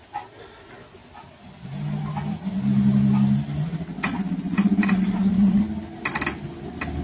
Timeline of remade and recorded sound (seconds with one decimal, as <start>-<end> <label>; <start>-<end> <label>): 0.0-3.9 recorded; 3.9-5.6 remade; 5.6-7.0 recorded